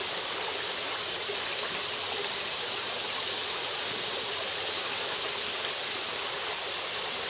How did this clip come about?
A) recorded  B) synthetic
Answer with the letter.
A